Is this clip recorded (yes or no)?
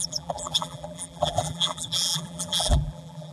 no